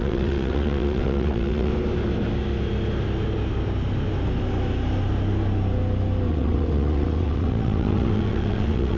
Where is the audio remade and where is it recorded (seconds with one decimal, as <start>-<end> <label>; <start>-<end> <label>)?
0.0-1.7 remade; 1.7-6.3 recorded; 6.3-9.0 remade